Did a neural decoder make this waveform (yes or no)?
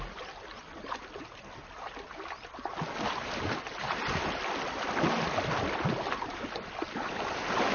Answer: no